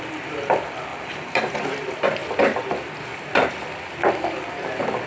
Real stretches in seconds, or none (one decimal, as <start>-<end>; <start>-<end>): 0.0-0.9; 1.5-5.1